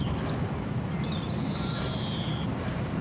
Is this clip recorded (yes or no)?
yes